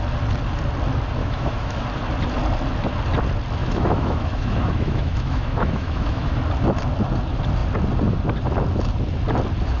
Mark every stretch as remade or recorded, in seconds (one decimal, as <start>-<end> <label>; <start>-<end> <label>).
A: 0.0-1.2 recorded; 1.2-1.8 remade; 1.8-3.6 recorded; 3.6-6.4 remade; 6.4-9.8 recorded